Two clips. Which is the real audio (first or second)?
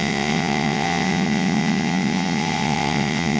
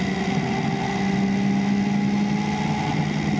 second